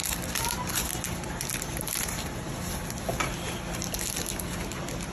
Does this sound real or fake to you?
real